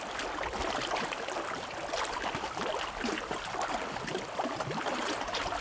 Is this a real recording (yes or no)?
yes